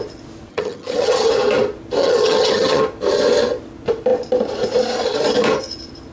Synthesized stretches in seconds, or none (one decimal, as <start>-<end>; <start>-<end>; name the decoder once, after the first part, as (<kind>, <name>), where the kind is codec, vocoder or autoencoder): 0.5-1.3 (vocoder, HiFi-GAN); 2.0-2.8